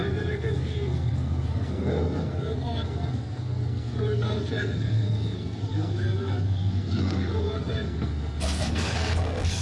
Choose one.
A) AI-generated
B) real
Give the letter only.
A